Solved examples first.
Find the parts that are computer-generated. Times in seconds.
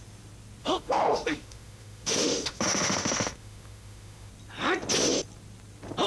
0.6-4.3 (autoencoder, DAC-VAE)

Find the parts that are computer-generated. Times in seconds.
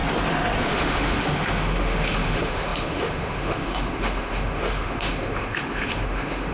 0.6-6.5 (autoencoder, DAC-VAE)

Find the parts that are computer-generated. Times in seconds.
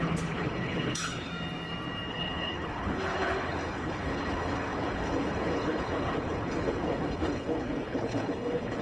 0.0-1.3 (codec, HILCodec); 2.1-8.8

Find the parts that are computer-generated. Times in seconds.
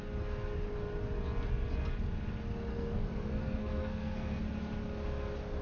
2.7-4.4 (codec, SNAC)